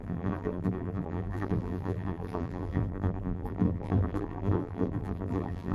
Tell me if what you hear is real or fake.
fake